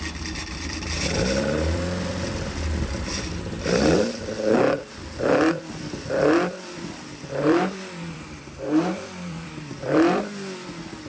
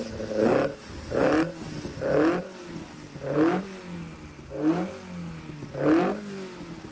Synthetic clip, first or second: first